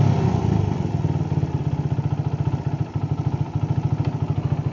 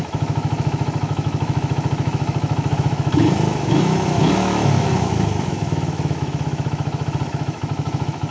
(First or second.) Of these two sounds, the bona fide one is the first